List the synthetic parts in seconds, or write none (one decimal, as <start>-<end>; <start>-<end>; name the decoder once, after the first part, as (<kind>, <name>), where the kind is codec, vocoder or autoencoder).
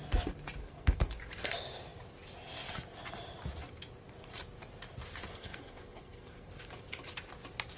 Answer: 0.6-1.1 (codec, SNAC); 5.3-6.5